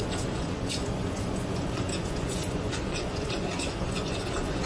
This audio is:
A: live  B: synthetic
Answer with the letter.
B